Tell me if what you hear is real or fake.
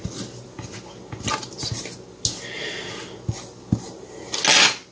real